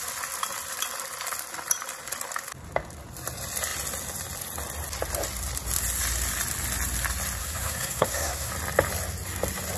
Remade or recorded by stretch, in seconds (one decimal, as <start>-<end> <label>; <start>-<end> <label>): 0.0-7.4 recorded; 7.4-8.5 remade; 8.5-9.8 recorded